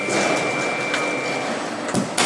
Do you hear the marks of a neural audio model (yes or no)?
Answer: no